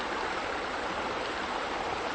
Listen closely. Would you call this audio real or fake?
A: real